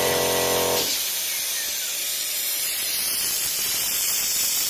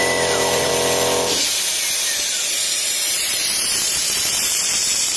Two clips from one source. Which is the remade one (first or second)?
second